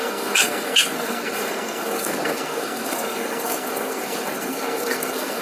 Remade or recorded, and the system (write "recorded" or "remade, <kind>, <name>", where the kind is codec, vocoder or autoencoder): remade, codec, SNAC